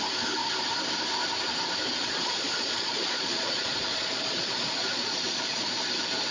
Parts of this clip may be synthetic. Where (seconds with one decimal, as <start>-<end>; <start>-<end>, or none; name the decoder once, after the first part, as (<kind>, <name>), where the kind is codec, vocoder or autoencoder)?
2.0-5.8 (vocoder, Vocos)